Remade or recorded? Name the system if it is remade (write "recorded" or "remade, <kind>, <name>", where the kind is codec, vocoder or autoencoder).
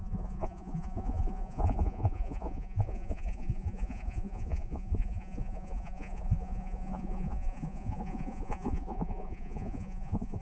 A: remade, vocoder, Vocos